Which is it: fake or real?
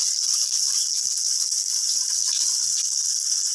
real